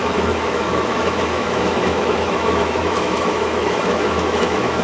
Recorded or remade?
remade